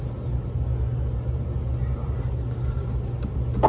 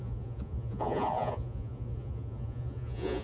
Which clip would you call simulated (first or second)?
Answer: second